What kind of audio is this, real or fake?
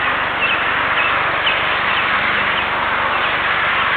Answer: real